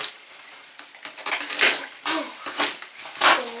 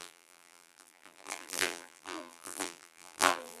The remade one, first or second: second